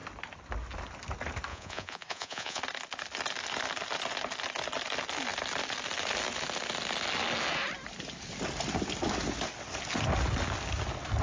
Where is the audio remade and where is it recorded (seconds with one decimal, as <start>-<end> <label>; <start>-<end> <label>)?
0.0-1.5 recorded; 1.5-2.6 remade; 2.6-11.2 recorded